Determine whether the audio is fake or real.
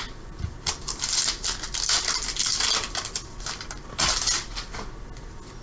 real